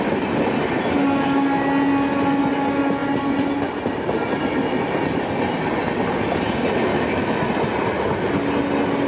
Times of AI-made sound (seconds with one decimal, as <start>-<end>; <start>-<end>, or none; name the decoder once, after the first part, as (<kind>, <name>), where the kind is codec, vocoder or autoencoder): 6.9-7.5 (autoencoder, DAC-VAE)